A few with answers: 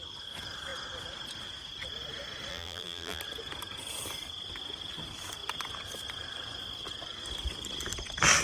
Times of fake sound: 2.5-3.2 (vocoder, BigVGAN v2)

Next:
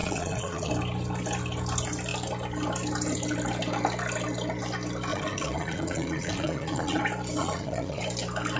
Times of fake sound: 0.0-0.7 (vocoder, Vocos); 5.1-7.0; 7.4-8.0

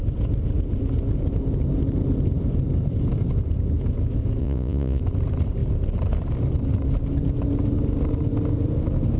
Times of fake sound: 4.4-5.0 (vocoder, Vocos)